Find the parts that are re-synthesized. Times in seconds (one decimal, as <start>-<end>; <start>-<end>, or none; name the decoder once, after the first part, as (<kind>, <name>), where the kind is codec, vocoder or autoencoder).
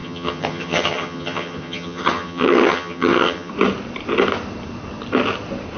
0.0-3.5 (vocoder, HiFi-GAN)